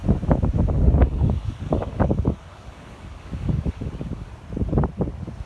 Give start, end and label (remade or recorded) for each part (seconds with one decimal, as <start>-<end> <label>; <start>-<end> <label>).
0.0-1.0 recorded; 1.0-4.3 remade; 4.3-5.5 recorded